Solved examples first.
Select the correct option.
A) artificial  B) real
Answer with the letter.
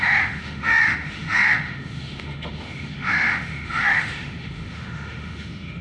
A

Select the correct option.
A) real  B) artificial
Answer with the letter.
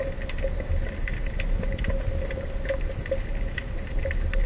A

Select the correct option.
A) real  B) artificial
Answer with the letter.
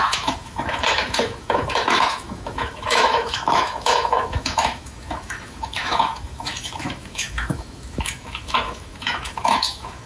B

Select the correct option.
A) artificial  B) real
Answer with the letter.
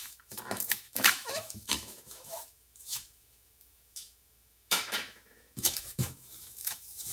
A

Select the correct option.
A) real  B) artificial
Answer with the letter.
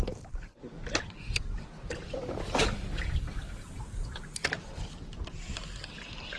A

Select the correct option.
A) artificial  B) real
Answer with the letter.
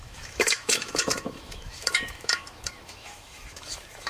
A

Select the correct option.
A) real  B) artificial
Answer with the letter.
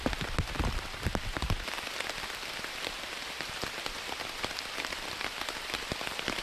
A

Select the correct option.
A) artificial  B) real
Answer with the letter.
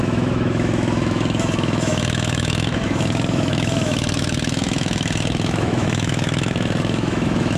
A